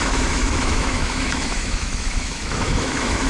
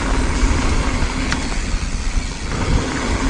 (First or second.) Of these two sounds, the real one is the second